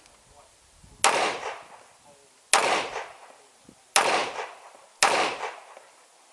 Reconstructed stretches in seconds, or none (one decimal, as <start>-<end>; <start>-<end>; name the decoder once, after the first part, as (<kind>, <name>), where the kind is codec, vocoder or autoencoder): none